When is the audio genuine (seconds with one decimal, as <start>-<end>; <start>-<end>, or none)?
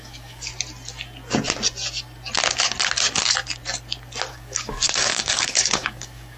0.5-4.3